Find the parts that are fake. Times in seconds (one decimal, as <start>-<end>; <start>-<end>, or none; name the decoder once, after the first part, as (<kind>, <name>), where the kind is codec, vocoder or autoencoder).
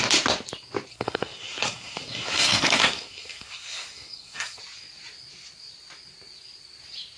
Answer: 0.9-4.6 (codec, SNAC)